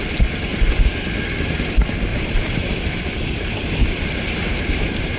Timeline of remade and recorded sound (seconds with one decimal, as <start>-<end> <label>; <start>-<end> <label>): 0.0-2.1 recorded; 2.1-5.2 remade